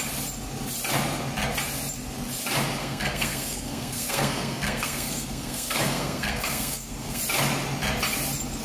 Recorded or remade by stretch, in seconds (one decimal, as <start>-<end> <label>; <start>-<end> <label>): 0.0-2.8 recorded; 2.8-7.2 remade; 7.2-8.6 recorded